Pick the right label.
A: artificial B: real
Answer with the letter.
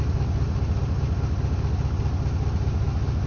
B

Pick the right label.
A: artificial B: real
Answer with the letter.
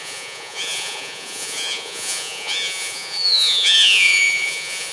A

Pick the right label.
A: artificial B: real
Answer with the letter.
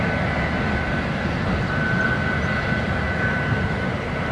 B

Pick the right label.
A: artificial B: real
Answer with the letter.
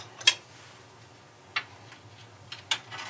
B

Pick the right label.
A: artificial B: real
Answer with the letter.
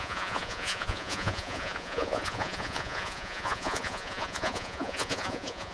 A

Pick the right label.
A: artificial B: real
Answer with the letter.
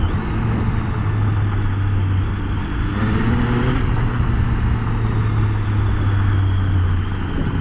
B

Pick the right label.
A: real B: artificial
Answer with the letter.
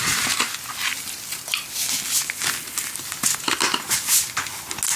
A